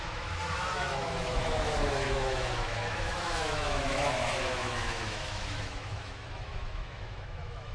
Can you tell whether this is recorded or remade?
remade